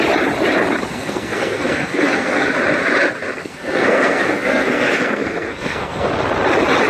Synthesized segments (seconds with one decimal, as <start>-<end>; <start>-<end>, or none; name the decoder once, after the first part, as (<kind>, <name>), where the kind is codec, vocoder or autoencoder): 0.9-2.5 (codec, SNAC); 3.3-6.1